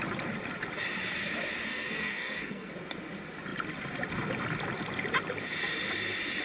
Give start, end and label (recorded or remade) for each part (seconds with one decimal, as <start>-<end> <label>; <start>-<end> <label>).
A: 0.0-1.7 recorded; 1.7-2.7 remade; 2.7-6.4 recorded